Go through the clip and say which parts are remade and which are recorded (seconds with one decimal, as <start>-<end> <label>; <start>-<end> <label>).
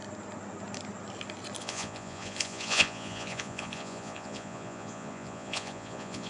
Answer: 0.0-1.6 recorded; 1.6-6.3 remade